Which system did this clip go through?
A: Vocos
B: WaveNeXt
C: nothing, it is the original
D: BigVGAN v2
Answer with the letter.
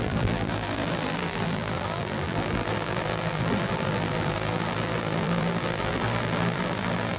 D